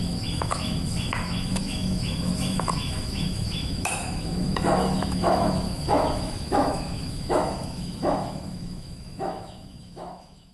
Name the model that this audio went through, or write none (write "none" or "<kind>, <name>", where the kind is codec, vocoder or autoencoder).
autoencoder, DAC-VAE